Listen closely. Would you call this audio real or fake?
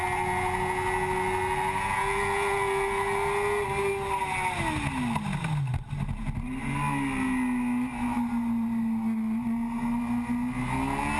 real